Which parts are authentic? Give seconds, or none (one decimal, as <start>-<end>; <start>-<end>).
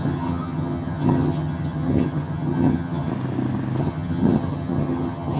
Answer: 3.1-3.8